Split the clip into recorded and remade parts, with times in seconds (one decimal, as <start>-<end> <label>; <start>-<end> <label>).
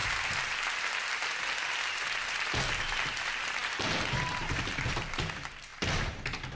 0.0-1.4 recorded; 1.4-3.6 remade; 3.6-4.4 recorded; 4.4-6.6 remade